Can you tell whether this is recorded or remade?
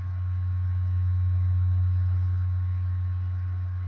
recorded